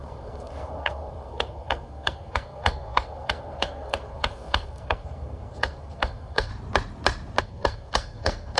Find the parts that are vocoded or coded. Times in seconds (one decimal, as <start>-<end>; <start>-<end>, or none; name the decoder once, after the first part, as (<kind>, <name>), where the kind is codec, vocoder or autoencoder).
0.0-6.5 (codec, SNAC); 7.4-8.6